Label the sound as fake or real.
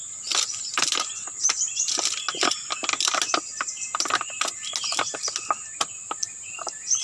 real